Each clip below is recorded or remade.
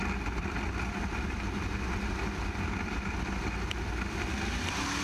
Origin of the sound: recorded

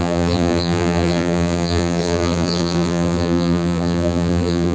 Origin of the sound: remade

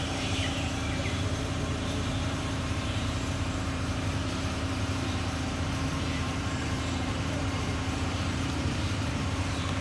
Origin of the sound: remade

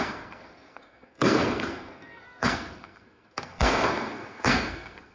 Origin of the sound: remade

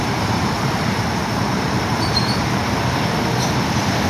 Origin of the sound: remade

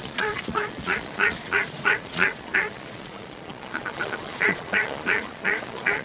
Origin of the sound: remade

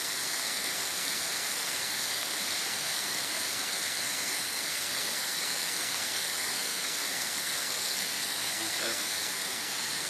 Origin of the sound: remade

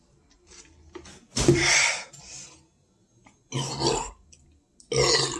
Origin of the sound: recorded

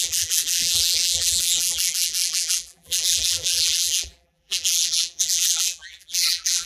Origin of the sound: remade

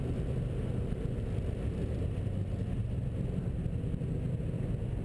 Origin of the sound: recorded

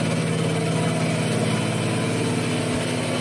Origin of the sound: recorded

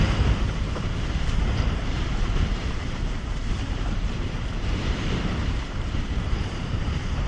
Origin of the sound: remade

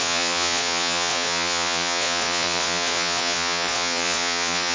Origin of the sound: remade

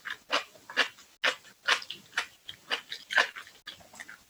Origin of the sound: recorded